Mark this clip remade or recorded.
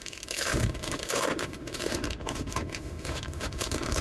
remade